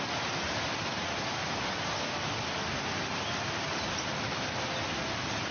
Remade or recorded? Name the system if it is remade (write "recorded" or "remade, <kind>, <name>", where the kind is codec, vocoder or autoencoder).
recorded